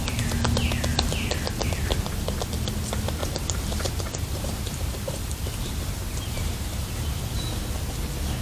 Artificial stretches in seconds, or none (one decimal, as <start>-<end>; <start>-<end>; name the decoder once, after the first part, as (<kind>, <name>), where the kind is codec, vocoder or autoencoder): 3.2-7.7 (vocoder, BigVGAN v2)